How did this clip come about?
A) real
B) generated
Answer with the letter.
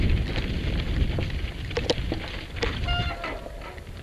A